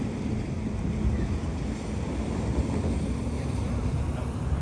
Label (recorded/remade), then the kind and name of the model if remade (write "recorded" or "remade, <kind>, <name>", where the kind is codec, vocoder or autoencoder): remade, vocoder, BigVGAN v2